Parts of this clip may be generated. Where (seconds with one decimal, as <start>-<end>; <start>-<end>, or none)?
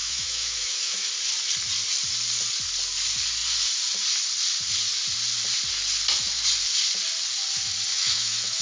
0.0-1.1; 7.9-8.6